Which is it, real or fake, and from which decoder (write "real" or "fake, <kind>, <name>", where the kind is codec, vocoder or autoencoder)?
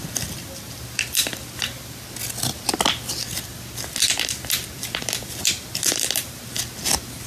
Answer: real